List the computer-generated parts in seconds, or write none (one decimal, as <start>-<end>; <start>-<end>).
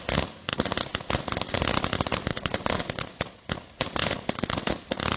2.3-3.5; 4.0-4.8